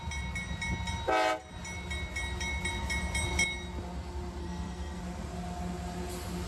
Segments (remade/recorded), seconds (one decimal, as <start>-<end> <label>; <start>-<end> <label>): 0.0-4.4 recorded; 4.4-5.0 remade; 5.0-6.5 recorded